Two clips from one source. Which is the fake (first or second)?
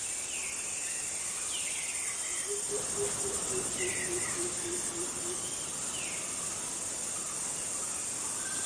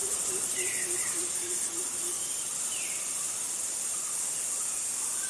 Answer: second